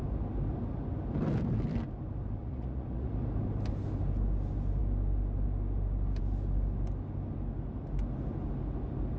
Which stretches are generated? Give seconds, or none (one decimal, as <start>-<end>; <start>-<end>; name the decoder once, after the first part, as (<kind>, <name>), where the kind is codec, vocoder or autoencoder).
2.4-3.1 (vocoder, Vocos)